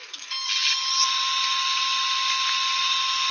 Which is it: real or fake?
real